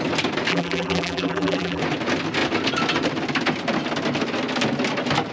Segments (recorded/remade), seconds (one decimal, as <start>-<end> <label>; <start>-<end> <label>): 0.0-0.5 recorded; 0.5-1.8 remade; 1.8-5.3 recorded